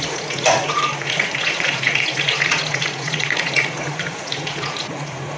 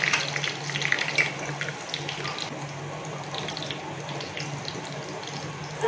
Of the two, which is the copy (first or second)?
first